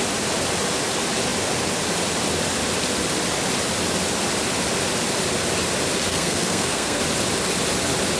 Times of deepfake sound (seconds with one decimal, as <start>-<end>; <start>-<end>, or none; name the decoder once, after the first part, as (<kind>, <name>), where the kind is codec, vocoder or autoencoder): 6.1-7.0 (codec, SNAC)